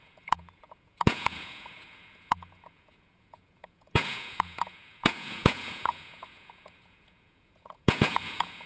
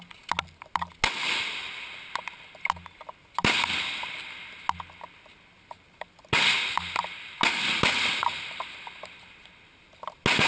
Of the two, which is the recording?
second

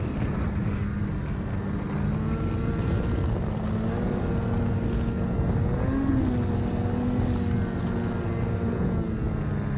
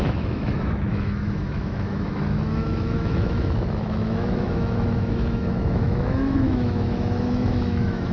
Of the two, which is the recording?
first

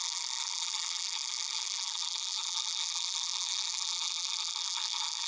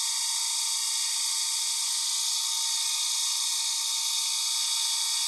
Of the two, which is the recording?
second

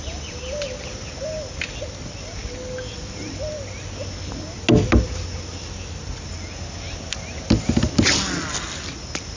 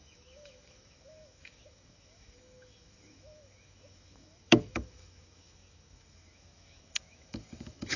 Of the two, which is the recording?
first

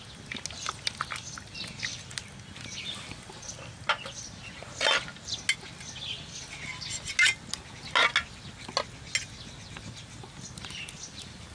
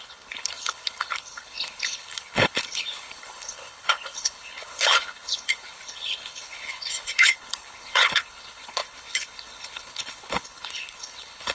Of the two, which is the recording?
first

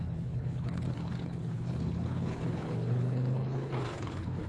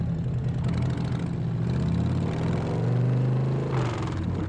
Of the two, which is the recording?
second